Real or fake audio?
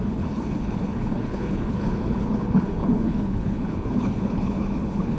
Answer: fake